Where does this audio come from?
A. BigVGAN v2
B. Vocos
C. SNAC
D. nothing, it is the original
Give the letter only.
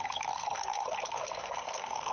C